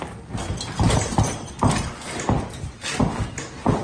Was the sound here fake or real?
real